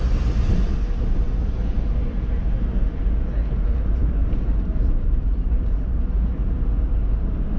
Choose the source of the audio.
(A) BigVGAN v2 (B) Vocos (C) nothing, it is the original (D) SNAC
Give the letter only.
A